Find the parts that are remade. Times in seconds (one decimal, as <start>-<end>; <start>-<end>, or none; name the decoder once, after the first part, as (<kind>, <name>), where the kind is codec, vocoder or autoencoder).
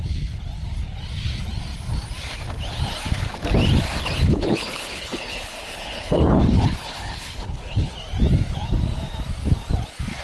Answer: 4.3-7.9 (codec, HILCodec)